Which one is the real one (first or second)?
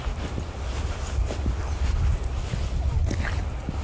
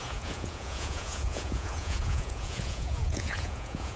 first